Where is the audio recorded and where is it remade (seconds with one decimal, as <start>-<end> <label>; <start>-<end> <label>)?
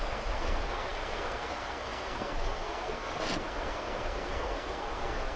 0.0-5.4 remade